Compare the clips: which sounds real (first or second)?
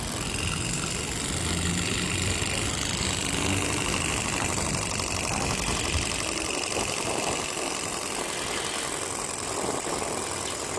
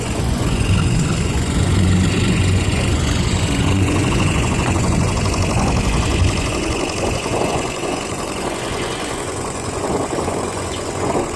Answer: first